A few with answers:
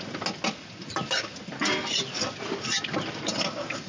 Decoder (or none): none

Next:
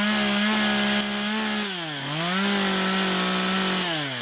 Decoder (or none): none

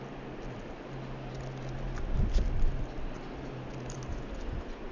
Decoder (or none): none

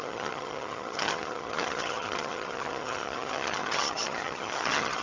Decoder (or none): vocoder, HiFi-GAN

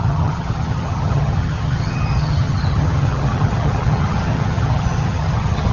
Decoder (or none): vocoder, HiFi-GAN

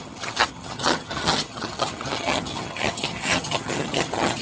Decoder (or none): vocoder, HiFi-GAN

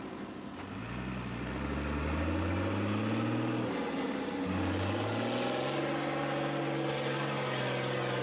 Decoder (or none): none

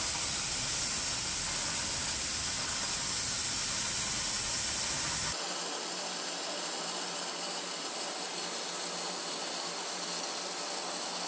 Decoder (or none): none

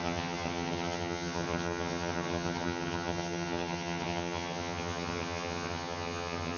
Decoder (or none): vocoder, HiFi-GAN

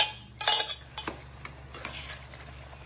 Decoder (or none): none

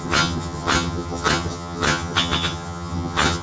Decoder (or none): vocoder, HiFi-GAN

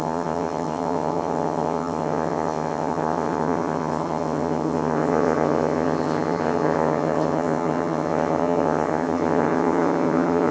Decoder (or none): vocoder, HiFi-GAN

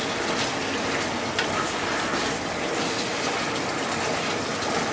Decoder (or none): none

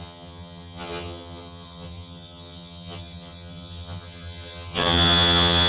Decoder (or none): vocoder, HiFi-GAN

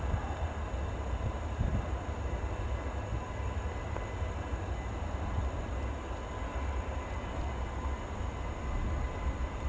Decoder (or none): none